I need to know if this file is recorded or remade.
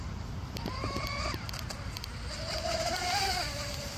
recorded